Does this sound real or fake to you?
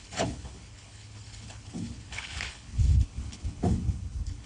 fake